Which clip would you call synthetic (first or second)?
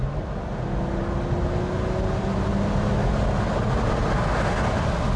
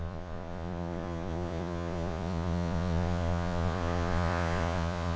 second